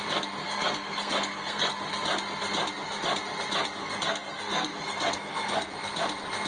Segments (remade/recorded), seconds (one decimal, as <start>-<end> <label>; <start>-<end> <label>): 0.0-0.4 recorded; 0.4-1.7 remade; 1.7-3.8 recorded; 3.8-5.7 remade; 5.7-6.5 recorded